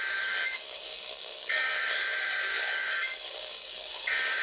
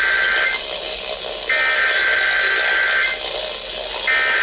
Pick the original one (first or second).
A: second